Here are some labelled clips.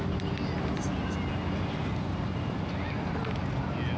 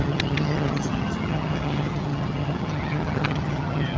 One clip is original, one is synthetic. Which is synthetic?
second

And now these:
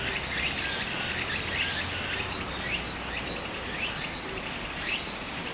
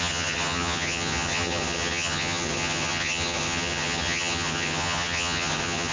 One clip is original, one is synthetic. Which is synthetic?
second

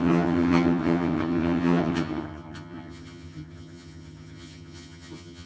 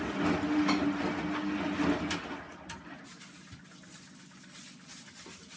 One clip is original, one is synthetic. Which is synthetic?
first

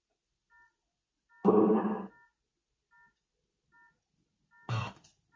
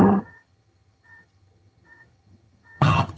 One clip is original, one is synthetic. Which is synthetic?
second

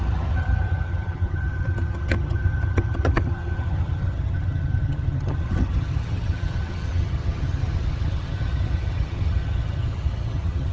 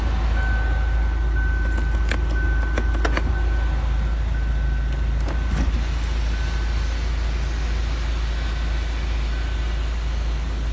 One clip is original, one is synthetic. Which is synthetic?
first